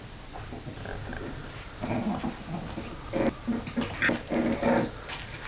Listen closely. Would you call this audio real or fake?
real